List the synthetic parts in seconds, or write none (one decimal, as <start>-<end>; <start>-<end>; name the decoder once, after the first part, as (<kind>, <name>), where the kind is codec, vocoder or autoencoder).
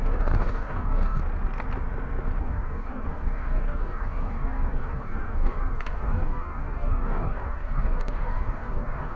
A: 0.0-1.2 (codec, DAC); 2.4-9.2